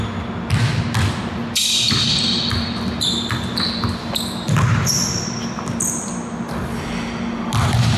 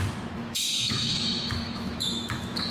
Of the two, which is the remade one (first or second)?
second